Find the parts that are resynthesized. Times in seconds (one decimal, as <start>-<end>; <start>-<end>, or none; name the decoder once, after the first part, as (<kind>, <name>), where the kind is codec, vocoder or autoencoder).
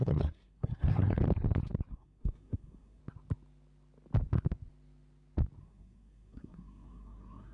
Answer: 0.0-1.2 (codec, SNAC); 1.9-3.0; 5.6-7.5